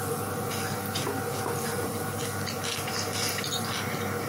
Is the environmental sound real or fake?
real